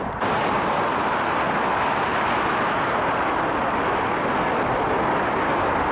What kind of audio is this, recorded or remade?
recorded